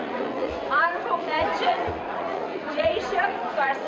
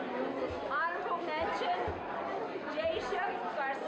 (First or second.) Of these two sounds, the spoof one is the first